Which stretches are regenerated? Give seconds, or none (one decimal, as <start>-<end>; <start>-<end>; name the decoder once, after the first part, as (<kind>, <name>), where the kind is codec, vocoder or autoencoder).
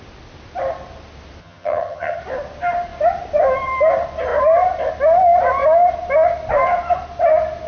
1.4-2.2 (vocoder, HiFi-GAN)